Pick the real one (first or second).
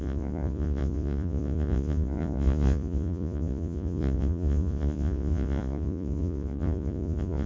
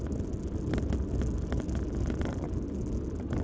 second